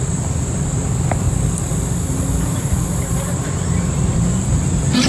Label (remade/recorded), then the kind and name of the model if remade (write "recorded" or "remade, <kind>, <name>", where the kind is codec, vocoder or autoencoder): remade, vocoder, BigVGAN v2